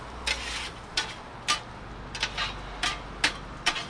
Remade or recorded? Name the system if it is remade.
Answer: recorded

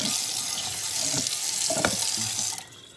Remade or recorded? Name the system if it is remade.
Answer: recorded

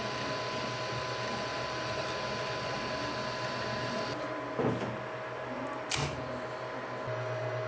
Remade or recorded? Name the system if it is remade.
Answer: recorded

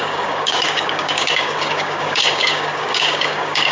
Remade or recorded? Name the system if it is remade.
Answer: remade, codec, DAC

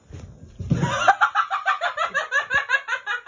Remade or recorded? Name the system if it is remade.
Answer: recorded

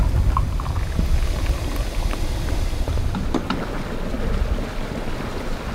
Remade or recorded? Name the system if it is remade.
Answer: recorded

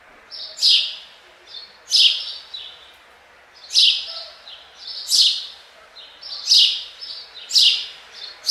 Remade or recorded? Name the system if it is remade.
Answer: recorded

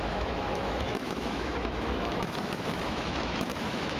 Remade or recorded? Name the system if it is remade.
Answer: remade, autoencoder, DAC-VAE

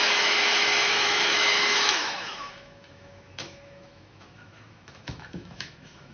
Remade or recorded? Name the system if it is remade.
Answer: remade, autoencoder, DAC-VAE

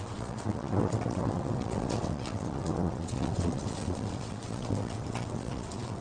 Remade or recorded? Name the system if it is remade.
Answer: remade, vocoder, WaveNeXt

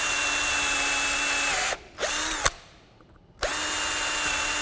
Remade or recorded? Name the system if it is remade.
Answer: recorded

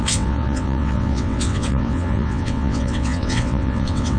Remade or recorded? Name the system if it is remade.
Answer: remade, vocoder, WaveNeXt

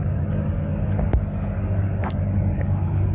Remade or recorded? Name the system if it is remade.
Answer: remade, codec, DAC